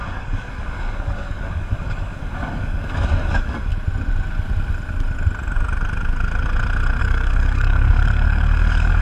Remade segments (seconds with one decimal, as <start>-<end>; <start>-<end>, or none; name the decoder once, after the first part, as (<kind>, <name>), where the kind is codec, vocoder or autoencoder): 0.0-3.7 (codec, DAC); 7.0-9.0